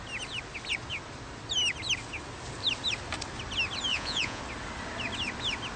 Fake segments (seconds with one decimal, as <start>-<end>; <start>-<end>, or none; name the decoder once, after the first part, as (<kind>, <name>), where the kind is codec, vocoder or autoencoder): 3.9-4.4 (vocoder, Vocos)